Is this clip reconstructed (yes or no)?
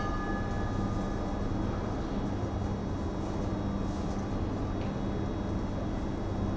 no